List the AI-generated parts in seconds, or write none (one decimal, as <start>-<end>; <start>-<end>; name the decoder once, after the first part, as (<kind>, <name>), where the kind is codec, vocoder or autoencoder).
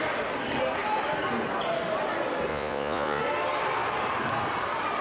2.5-3.2 (vocoder, Vocos)